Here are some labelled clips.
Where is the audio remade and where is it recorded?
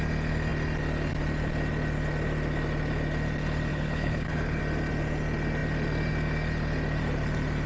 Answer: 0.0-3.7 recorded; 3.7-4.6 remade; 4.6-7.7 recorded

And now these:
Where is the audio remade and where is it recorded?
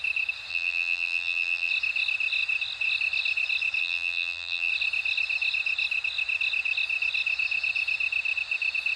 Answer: 0.0-0.5 recorded; 0.5-1.7 remade; 1.7-3.8 recorded; 3.8-4.7 remade; 4.7-9.0 recorded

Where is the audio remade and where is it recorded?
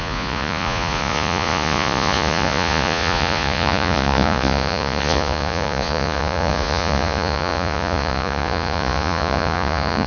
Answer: 0.0-10.1 remade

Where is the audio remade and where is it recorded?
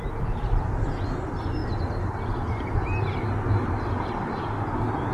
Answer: 0.0-1.6 recorded; 1.6-2.6 remade; 2.6-5.1 recorded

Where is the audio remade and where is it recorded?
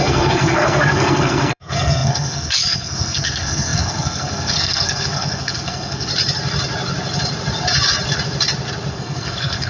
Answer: 0.0-6.1 remade; 6.1-8.9 recorded; 8.9-9.7 remade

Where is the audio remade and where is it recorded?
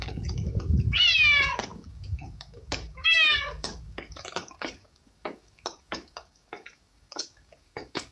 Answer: 0.0-8.1 remade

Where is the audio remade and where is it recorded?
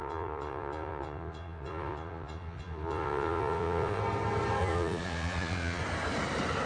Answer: 0.0-4.0 remade; 4.0-4.6 recorded; 4.6-5.8 remade; 5.8-6.7 recorded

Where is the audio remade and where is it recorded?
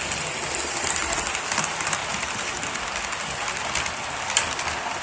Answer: 0.0-5.0 recorded